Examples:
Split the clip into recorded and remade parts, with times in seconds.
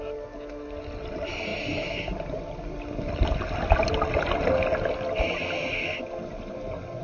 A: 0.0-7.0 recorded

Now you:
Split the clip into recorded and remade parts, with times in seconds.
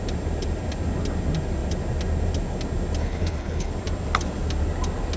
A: 0.0-3.0 recorded; 3.0-3.7 remade; 3.7-5.2 recorded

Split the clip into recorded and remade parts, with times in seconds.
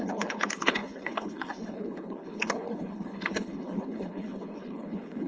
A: 0.0-5.3 remade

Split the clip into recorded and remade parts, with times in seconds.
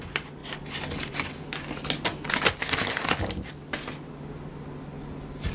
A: 0.0-5.5 recorded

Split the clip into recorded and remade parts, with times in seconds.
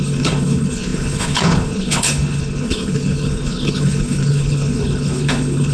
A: 0.0-5.7 remade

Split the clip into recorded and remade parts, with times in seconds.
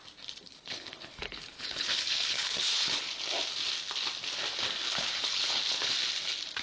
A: 0.0-0.5 recorded; 0.5-3.2 remade; 3.2-5.1 recorded; 5.1-5.6 remade; 5.6-6.6 recorded